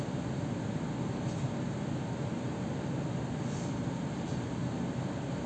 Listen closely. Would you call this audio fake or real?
real